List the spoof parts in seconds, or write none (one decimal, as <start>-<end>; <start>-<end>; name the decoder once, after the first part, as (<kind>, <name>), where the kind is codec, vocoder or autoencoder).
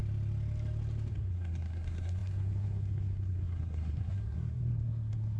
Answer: 1.1-5.4 (codec, SNAC)